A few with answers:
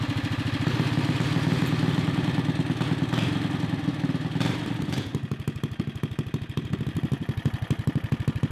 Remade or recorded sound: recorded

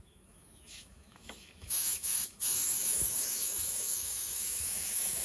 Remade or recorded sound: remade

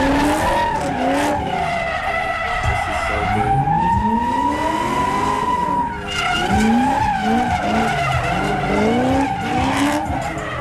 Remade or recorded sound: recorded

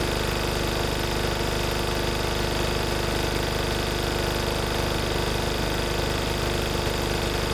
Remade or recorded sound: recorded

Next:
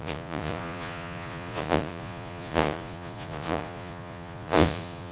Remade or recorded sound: remade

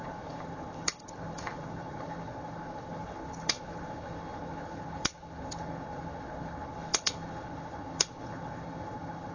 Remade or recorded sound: remade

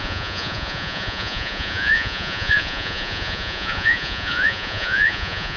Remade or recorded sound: remade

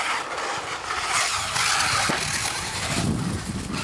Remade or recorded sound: recorded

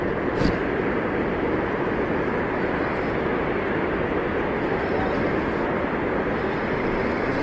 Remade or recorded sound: recorded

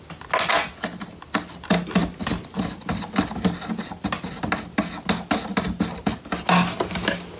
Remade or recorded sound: recorded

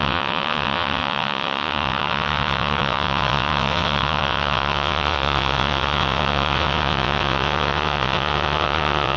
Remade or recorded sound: remade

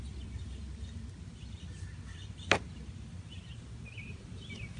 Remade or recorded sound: recorded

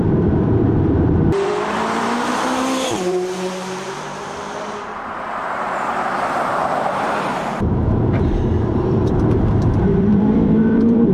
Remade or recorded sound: remade